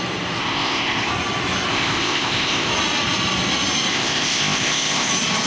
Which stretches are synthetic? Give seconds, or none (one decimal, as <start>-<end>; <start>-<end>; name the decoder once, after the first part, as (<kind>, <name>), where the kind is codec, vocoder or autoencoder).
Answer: 0.4-1.1 (codec, ZipCodec); 1.7-2.7; 3.9-5.1